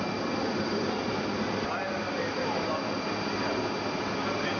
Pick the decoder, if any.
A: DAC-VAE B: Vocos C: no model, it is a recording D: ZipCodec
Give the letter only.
C